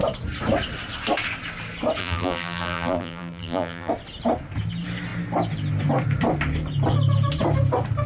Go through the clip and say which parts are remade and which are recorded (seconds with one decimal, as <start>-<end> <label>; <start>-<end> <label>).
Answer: 0.0-2.0 recorded; 2.0-3.9 remade; 3.9-8.1 recorded